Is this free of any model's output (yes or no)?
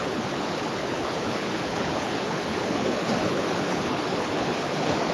no